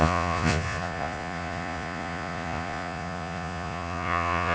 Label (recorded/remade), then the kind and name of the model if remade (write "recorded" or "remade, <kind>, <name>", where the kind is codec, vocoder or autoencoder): remade, vocoder, Vocos